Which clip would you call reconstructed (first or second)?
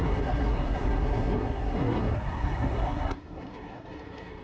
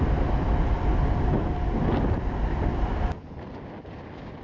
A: first